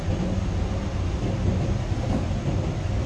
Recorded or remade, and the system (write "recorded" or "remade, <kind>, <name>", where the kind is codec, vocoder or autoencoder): recorded